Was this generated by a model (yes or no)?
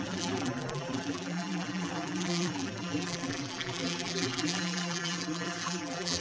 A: yes